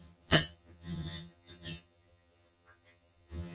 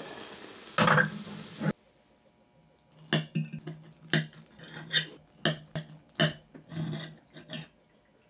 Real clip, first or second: second